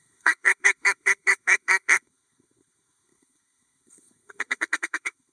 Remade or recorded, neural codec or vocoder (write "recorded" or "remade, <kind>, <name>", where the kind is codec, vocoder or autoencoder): remade, codec, SNAC